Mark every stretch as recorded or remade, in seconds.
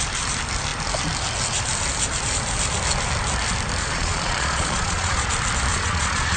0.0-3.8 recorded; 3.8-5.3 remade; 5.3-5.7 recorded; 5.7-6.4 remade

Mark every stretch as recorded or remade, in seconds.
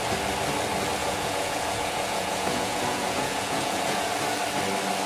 0.0-1.0 recorded; 1.0-4.1 remade; 4.1-5.1 recorded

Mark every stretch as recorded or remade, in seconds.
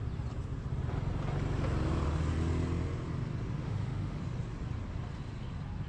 0.0-3.6 recorded; 3.6-4.2 remade; 4.2-5.9 recorded